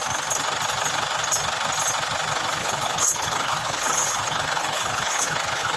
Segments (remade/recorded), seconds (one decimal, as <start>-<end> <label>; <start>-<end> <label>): 0.0-2.6 recorded; 2.6-5.8 remade

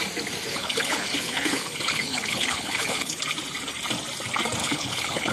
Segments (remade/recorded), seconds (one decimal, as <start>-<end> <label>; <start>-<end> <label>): 0.0-0.5 recorded; 0.5-3.2 remade; 3.2-4.6 recorded; 4.6-5.3 remade

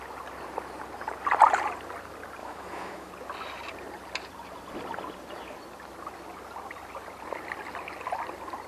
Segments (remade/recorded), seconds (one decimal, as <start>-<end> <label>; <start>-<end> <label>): 0.0-2.4 recorded; 2.4-3.1 remade; 3.1-8.7 recorded

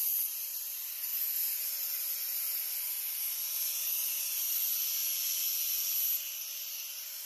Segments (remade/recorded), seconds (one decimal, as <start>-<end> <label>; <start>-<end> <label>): 0.0-1.1 remade; 1.1-3.9 recorded; 3.9-5.0 remade; 5.0-6.2 recorded; 6.2-7.3 remade

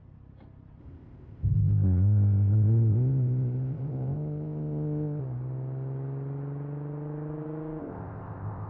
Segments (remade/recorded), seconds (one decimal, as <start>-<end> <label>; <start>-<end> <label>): 0.0-0.8 recorded; 0.8-5.2 remade; 5.2-7.8 recorded; 7.8-8.7 remade

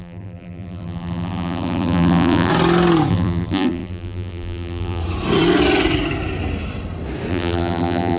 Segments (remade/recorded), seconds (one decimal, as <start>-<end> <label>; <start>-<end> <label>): 0.0-2.5 remade; 2.5-3.1 recorded; 3.1-5.0 remade; 5.0-7.3 recorded; 7.3-8.2 remade